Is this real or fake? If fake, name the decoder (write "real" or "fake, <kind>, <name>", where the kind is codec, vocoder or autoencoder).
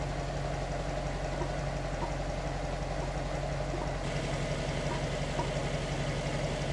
real